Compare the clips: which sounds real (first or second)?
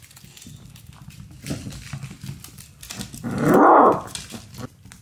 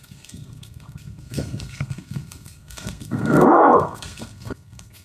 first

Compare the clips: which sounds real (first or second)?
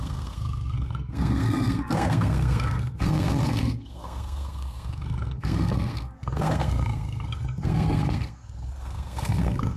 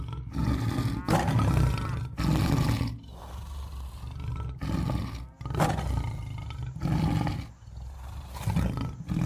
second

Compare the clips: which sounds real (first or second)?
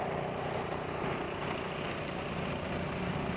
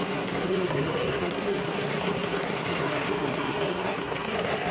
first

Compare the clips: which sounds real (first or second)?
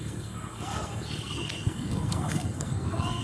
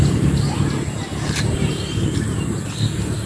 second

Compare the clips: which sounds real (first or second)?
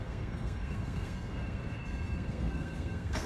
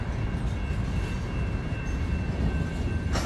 second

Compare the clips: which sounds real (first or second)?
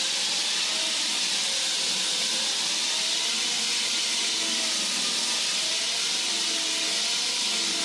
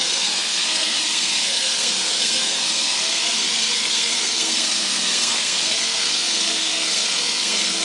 first